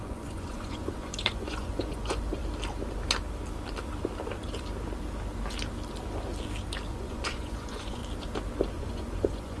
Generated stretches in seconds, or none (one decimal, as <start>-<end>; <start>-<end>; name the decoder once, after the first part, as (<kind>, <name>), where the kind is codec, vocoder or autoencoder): 0.0-2.4 (vocoder, Vocos); 6.9-8.0; 8.7-9.6